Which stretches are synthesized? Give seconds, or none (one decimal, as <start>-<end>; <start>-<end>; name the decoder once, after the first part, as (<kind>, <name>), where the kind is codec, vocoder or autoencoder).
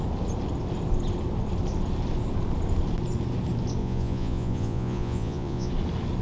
3.8-5.7 (vocoder, Vocos)